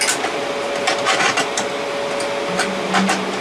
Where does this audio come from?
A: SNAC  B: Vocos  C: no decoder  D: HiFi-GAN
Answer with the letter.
C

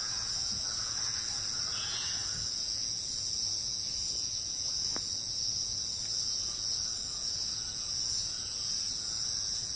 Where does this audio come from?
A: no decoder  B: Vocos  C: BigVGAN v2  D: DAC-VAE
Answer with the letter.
B